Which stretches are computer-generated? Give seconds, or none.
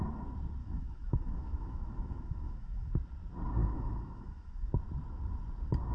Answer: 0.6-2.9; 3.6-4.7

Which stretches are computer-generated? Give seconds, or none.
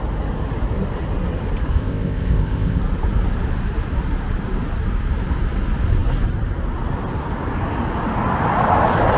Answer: 1.7-2.8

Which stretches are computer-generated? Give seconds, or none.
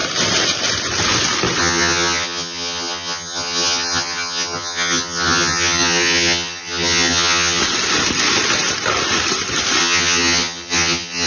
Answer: 1.6-7.6; 9.8-11.3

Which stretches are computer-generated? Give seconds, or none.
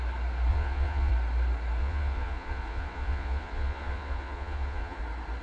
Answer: 0.5-1.1; 1.8-5.0